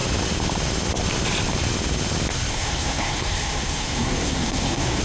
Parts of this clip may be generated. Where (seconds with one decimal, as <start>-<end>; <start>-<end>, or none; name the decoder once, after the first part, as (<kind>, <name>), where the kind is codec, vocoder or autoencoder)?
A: 2.5-5.0 (codec, SNAC)